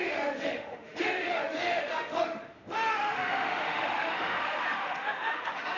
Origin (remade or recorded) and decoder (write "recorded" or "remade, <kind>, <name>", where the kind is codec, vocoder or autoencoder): remade, autoencoder, DAC-VAE